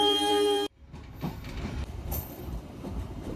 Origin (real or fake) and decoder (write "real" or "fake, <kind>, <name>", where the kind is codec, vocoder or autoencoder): fake, vocoder, BigVGAN v2